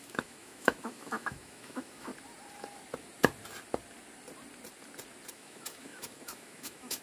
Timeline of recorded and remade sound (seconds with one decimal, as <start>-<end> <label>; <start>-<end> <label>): 0.0-2.1 remade; 2.1-5.3 recorded; 5.3-7.0 remade